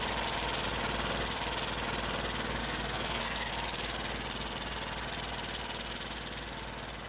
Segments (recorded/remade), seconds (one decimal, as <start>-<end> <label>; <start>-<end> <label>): 0.0-2.6 recorded; 2.6-3.5 remade; 3.5-7.1 recorded